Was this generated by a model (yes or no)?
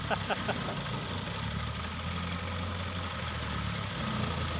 no